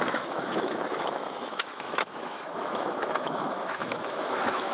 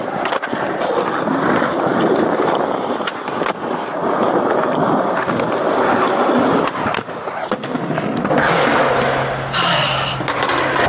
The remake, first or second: first